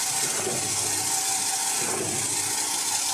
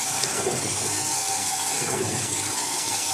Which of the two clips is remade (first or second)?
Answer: second